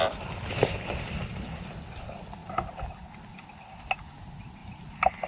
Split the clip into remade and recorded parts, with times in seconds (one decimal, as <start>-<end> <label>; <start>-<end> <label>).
0.0-5.3 recorded